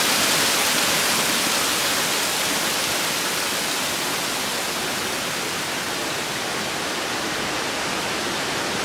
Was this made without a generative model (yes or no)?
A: yes